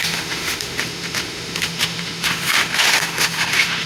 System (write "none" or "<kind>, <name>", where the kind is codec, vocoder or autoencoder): autoencoder, DAC-VAE